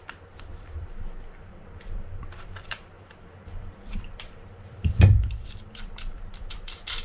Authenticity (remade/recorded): remade